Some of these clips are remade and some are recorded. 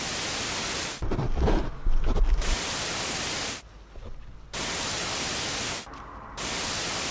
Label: recorded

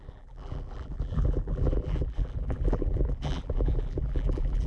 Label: remade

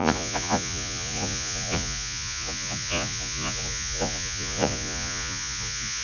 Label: remade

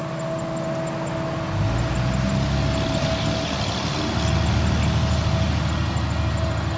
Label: recorded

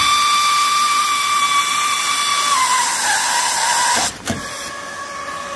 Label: recorded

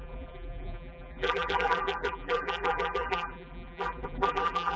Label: remade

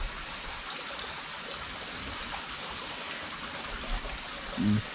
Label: recorded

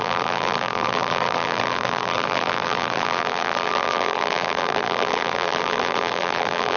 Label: remade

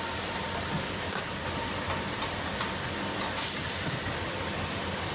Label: recorded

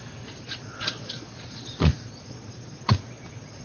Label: remade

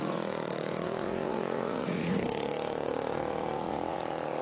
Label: remade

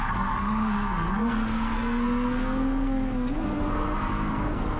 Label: remade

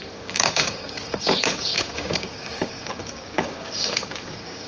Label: remade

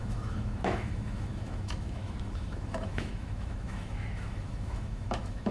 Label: remade